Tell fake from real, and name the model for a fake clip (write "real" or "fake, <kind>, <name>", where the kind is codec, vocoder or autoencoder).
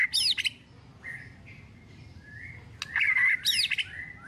real